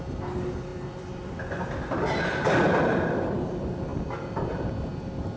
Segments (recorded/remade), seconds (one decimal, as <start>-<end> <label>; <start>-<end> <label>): 0.0-0.7 recorded; 0.7-3.2 remade; 3.2-3.9 recorded; 3.9-4.7 remade; 4.7-5.4 recorded